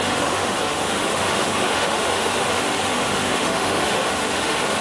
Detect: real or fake fake